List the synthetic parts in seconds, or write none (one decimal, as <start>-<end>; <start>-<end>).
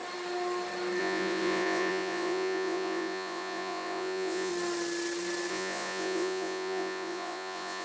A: 1.0-4.5; 5.5-7.8